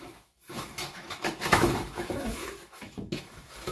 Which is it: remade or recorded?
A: remade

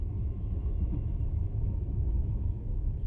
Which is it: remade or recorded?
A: remade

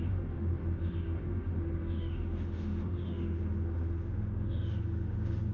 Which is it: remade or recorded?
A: remade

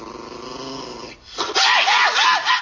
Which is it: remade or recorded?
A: recorded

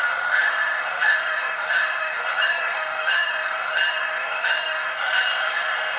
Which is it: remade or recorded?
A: remade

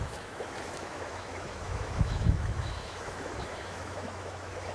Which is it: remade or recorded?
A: remade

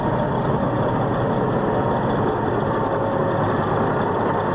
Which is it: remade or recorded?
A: recorded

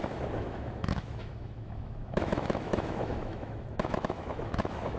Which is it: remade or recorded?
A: remade